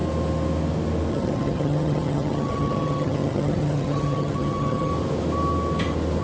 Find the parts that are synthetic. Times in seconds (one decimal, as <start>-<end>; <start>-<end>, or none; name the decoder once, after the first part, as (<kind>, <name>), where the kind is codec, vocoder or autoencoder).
1.1-4.9 (vocoder, HiFi-GAN)

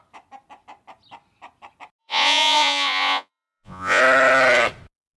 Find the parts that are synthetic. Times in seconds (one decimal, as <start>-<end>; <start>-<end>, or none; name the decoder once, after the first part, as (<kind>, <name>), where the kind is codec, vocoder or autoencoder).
2.0-4.0 (vocoder, Vocos)